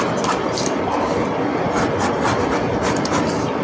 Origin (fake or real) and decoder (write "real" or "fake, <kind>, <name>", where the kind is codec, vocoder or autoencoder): real